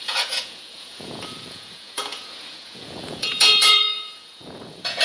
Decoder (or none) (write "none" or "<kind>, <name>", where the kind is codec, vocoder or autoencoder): vocoder, Vocos